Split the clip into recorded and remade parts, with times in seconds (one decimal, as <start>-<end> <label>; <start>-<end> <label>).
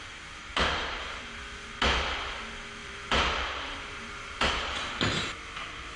0.0-0.5 recorded; 0.5-1.2 remade; 1.2-2.8 recorded; 2.8-4.9 remade; 4.9-6.0 recorded